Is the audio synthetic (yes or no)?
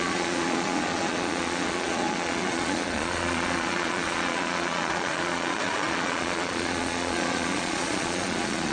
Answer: yes